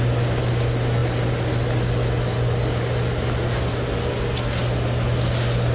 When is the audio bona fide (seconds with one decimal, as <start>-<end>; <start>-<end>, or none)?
0.0-5.7